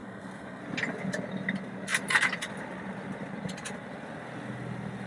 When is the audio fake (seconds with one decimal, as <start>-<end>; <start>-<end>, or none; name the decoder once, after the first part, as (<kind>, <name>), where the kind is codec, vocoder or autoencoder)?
0.0-0.6 (codec, SNAC)